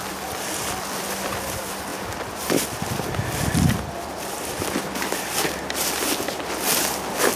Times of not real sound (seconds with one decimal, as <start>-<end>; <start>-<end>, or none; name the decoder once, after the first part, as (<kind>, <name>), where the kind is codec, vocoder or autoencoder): 1.9-2.8 (vocoder, BigVGAN v2)